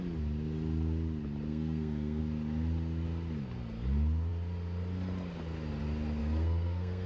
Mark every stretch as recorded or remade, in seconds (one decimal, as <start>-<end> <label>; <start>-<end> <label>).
0.0-1.5 recorded; 1.5-2.2 remade; 2.2-6.2 recorded; 6.2-7.1 remade